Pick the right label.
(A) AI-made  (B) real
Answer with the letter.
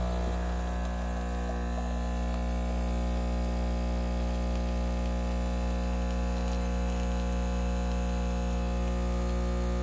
B